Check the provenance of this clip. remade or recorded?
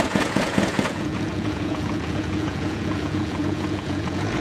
remade